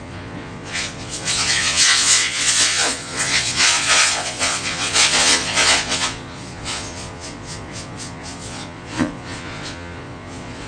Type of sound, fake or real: fake